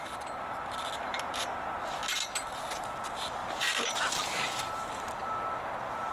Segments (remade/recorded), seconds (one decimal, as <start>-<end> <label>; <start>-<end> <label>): 0.0-3.4 recorded; 3.4-5.3 remade; 5.3-6.1 recorded